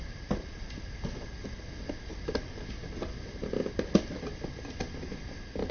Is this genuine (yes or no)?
yes